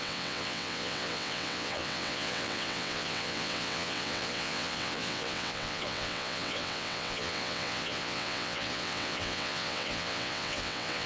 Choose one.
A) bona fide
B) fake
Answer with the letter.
B